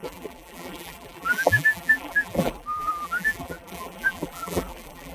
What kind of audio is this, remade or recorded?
remade